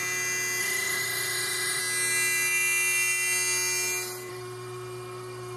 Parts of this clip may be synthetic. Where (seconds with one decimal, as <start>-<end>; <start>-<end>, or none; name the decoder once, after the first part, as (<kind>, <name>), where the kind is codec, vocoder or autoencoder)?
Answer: 0.6-1.8 (autoencoder, DAC-VAE); 4.3-5.6